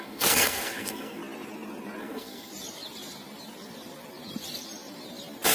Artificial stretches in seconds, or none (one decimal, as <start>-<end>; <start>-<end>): 0.0-1.2; 2.0-2.5